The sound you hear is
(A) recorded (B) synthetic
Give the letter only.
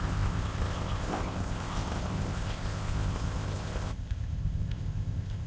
B